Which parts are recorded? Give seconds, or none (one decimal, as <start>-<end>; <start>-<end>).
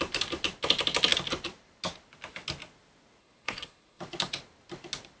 0.0-3.2; 4.0-5.2